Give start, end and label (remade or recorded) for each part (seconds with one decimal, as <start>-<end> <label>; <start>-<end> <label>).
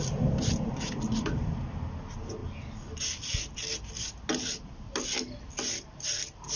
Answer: 0.0-6.6 recorded